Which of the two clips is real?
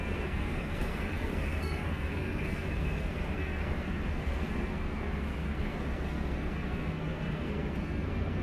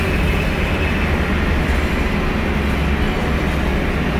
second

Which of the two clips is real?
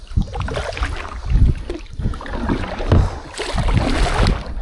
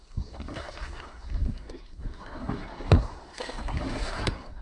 first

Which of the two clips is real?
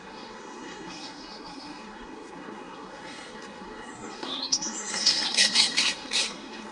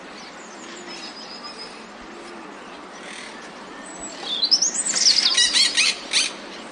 second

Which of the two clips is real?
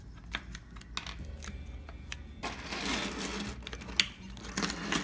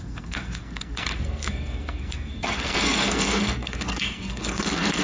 first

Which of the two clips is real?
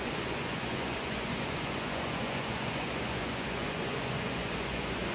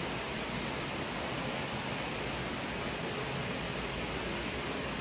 second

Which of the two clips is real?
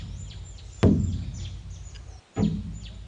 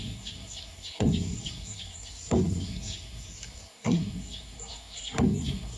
first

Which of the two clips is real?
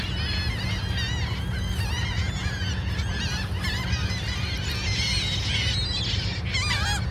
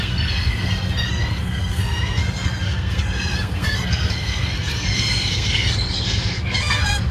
first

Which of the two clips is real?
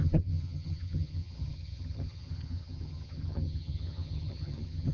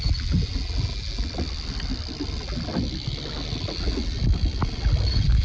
second